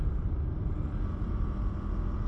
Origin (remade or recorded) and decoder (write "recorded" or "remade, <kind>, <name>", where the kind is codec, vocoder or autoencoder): recorded